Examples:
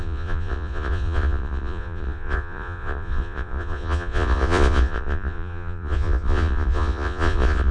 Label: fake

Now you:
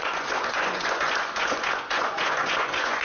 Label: fake